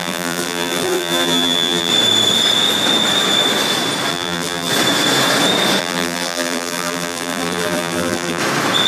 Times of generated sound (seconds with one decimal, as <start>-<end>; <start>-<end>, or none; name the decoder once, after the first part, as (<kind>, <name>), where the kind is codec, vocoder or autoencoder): 0.0-1.9 (vocoder, BigVGAN v2); 4.1-4.7; 5.8-8.4